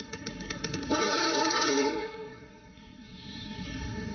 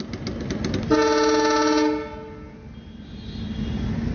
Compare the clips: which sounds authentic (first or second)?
second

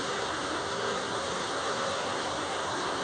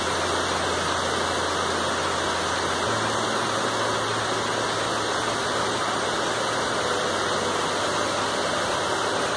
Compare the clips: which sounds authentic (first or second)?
second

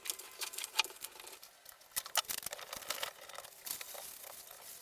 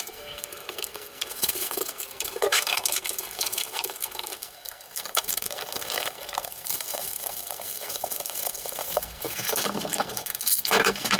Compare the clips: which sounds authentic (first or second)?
first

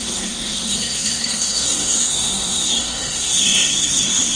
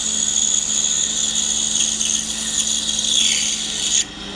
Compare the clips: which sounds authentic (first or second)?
second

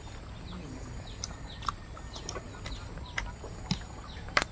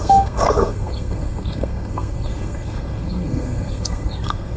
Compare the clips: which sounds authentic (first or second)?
first